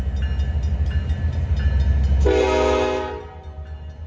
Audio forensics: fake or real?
real